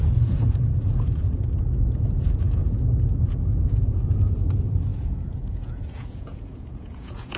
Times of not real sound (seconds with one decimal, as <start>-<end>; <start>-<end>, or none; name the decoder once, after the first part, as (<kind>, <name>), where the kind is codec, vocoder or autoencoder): 0.0-2.6 (vocoder, Vocos); 3.6-7.4